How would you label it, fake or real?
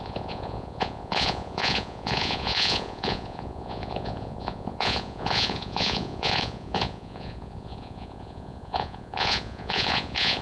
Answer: fake